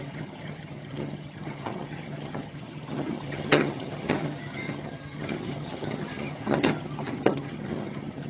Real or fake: fake